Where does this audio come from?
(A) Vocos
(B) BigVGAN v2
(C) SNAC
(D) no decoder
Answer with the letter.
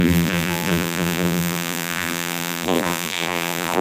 B